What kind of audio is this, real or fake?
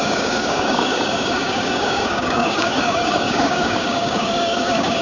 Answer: fake